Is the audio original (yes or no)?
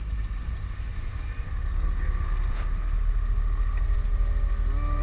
yes